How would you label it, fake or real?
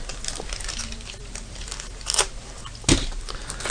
real